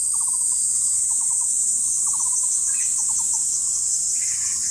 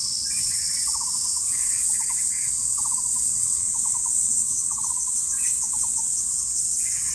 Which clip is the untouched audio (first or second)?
first